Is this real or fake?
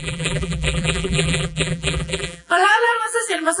fake